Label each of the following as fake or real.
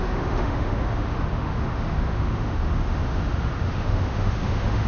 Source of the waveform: fake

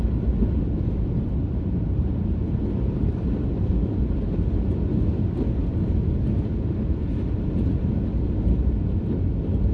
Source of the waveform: real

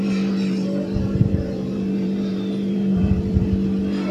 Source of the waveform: fake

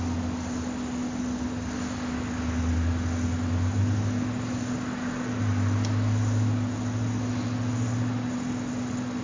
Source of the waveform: real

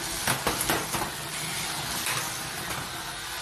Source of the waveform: real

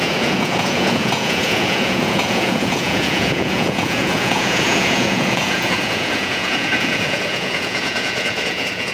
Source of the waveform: fake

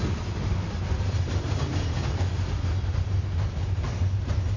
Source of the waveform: real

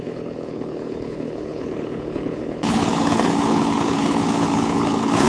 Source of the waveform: fake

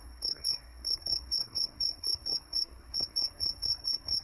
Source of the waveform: fake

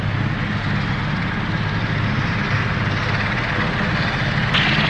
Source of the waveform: real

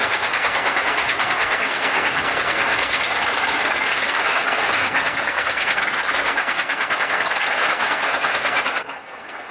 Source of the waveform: fake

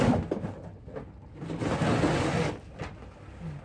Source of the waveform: real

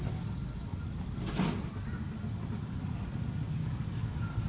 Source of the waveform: real